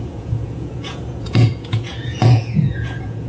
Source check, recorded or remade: remade